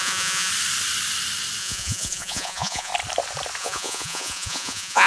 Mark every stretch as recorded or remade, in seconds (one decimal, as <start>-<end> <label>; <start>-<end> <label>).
0.0-0.5 remade; 0.5-1.6 recorded; 1.6-2.9 remade; 2.9-3.6 recorded; 3.6-5.1 remade